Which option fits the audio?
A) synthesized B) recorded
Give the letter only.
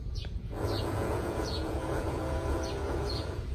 A